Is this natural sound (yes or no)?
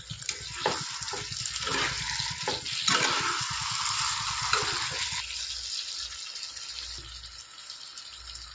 yes